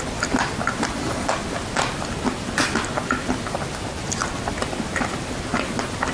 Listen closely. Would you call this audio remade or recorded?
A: recorded